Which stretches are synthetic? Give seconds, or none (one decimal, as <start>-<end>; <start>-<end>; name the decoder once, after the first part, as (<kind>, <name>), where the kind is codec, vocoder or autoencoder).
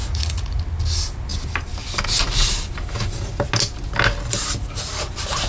0.0-0.6 (vocoder, Vocos)